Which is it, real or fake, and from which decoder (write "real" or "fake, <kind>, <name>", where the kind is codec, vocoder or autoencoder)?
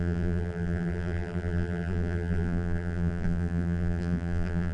fake, vocoder, BigVGAN v2